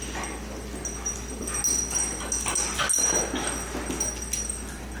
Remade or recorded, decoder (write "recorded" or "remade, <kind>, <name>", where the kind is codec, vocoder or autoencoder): recorded